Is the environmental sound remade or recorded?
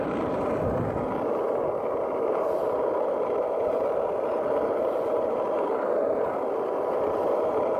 recorded